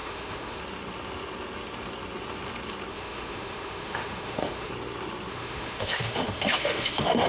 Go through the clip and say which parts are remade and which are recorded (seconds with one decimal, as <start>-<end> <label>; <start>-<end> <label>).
0.0-0.6 remade; 0.6-2.9 recorded; 2.9-4.7 remade; 4.7-5.3 recorded; 5.3-7.3 remade